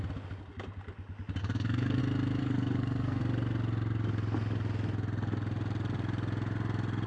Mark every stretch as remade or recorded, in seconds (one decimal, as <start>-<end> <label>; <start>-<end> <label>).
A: 0.0-1.4 recorded; 1.4-2.0 remade; 2.0-2.4 recorded; 2.4-3.2 remade; 3.2-7.1 recorded